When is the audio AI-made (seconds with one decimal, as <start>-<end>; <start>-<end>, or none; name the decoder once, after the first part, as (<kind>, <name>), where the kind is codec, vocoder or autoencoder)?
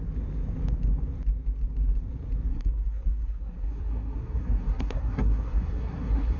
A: 2.5-6.4 (codec, SNAC)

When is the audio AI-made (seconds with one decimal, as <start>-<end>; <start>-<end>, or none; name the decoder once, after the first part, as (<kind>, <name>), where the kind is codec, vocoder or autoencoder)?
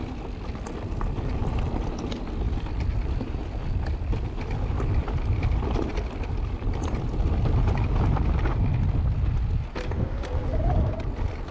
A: 2.9-5.9 (vocoder, BigVGAN v2)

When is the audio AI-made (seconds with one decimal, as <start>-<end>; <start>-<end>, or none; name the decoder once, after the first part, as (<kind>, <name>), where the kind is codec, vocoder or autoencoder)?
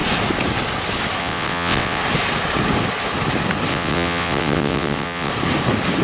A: 1.2-2.0 (vocoder, WaveNeXt); 3.7-5.3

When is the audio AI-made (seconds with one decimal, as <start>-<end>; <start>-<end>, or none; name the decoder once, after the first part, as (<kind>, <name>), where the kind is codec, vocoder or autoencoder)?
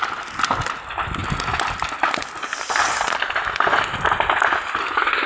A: none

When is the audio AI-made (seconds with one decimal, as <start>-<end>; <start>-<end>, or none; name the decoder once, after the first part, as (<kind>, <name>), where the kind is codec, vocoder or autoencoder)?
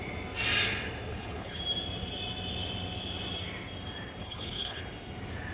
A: 1.1-1.6 (codec, HILCodec); 4.2-4.8